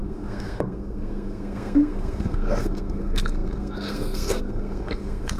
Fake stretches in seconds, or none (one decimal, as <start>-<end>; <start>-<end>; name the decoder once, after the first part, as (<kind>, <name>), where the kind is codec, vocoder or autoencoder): 0.0-5.4 (codec, SNAC)